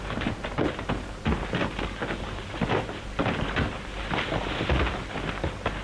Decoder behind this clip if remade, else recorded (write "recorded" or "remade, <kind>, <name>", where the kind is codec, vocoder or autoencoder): recorded